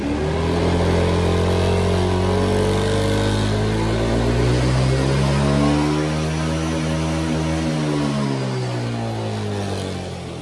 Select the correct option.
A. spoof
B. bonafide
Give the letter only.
B